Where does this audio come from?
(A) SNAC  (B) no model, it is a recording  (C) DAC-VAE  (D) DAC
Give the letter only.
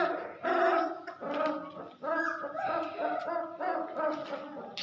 B